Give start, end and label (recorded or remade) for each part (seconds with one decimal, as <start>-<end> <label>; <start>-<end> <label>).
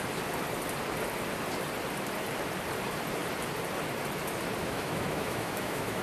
0.0-4.6 recorded; 4.6-6.0 remade